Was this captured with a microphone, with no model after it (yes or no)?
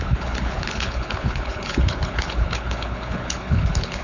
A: no